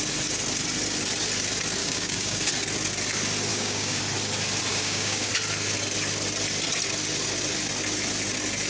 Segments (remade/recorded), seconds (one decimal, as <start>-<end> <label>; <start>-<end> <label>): 0.0-1.8 recorded; 1.8-2.4 remade; 2.4-3.5 recorded; 3.5-4.0 remade; 4.0-4.7 recorded; 4.7-5.3 remade; 5.3-8.7 recorded